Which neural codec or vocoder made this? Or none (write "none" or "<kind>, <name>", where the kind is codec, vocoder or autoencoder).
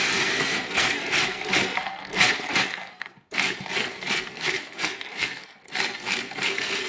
codec, SNAC